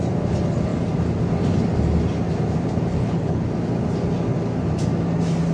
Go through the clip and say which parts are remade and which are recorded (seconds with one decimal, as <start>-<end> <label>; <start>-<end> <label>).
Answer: 0.0-2.9 recorded; 2.9-3.5 remade; 3.5-5.5 recorded